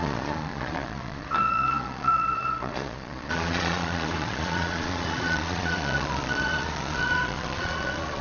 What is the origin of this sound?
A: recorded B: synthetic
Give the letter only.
B